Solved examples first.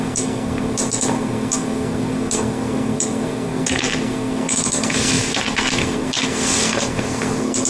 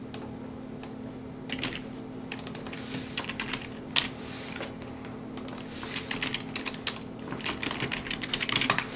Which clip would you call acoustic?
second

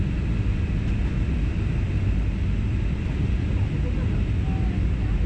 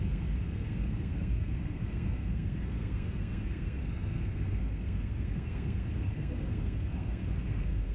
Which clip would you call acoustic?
first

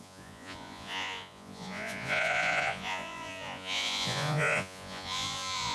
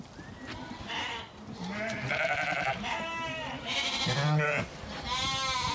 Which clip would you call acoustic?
second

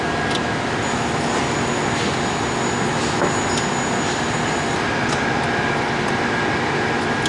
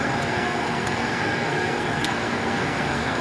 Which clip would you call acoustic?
first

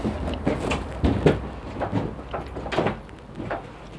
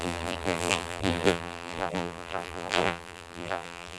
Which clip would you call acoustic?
first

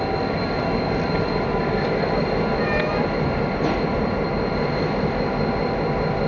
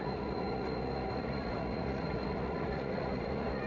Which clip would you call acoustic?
first